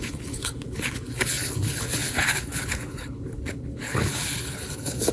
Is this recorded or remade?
remade